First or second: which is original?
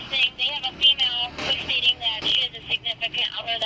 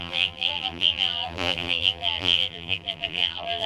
first